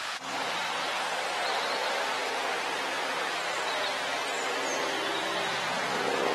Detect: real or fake real